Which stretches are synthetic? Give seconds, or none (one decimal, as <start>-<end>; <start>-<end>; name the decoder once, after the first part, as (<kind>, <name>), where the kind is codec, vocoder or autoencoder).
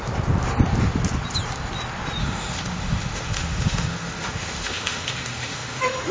2.2-6.1 (autoencoder, DAC-VAE)